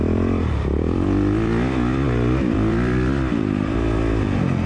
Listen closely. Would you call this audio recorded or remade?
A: remade